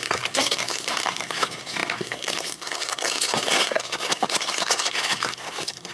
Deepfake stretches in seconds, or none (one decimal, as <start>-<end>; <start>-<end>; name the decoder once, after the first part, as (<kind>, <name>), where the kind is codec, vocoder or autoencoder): 0.0-5.9 (codec, SNAC)